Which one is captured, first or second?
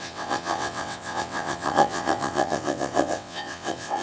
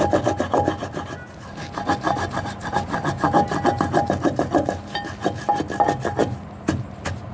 second